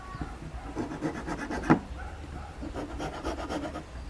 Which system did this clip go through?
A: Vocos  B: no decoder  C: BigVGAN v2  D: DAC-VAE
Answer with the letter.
B